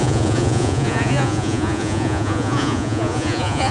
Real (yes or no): no